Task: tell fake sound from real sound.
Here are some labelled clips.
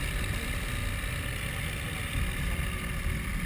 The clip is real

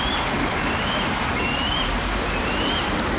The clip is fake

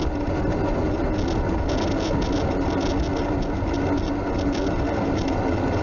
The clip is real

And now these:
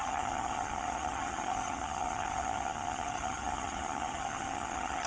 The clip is fake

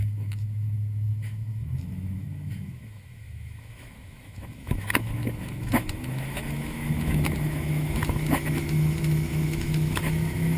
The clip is fake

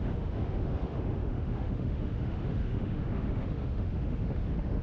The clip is fake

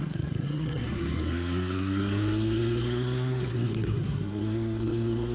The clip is fake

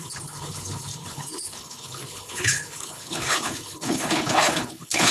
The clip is fake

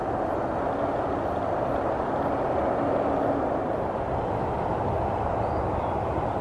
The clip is real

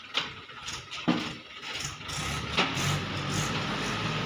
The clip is real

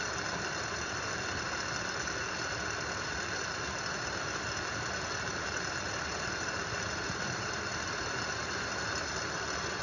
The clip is real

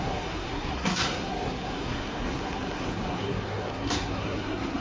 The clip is fake